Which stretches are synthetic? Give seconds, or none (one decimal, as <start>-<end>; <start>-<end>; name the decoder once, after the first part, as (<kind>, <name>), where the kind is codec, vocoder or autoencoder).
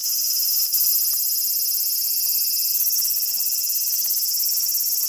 0.0-0.9 (autoencoder, DAC-VAE); 2.7-5.1